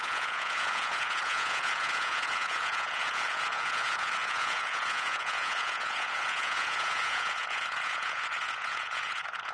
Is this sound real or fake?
fake